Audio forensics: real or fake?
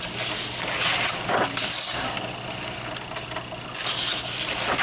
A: real